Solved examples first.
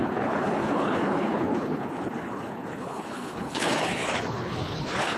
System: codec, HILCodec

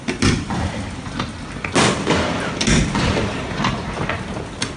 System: none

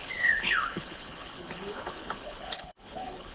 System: codec, HILCodec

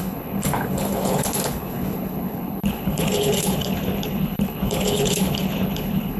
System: codec, HILCodec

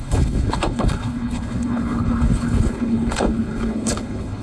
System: codec, HILCodec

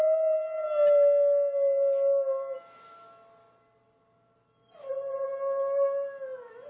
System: none